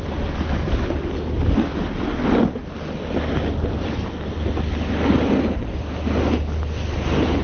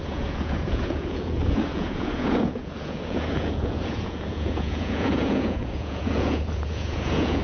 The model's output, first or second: second